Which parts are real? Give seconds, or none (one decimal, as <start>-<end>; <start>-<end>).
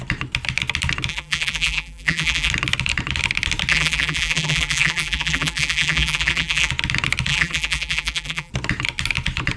0.0-1.1; 2.5-3.7; 6.7-7.3; 8.5-9.6